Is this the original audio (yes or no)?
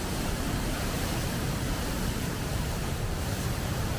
no